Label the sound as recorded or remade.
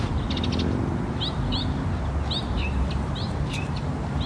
recorded